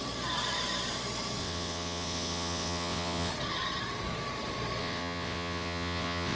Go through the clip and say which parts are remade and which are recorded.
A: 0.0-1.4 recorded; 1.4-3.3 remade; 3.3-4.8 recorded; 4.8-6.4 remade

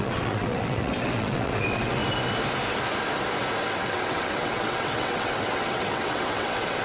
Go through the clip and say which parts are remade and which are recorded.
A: 0.0-2.0 remade; 2.0-3.6 recorded; 3.6-6.8 remade